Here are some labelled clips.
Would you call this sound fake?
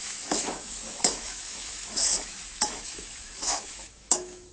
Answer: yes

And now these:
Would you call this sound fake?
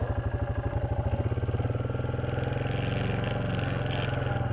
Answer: no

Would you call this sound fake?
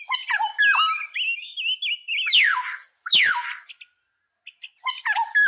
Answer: no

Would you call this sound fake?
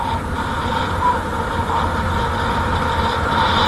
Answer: no